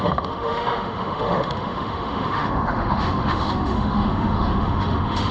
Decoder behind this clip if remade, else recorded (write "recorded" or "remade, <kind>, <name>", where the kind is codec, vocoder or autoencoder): remade, autoencoder, DAC-VAE